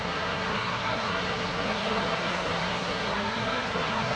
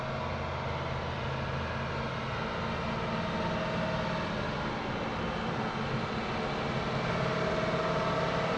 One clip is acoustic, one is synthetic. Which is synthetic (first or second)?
first